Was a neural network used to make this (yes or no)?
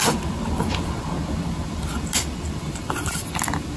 no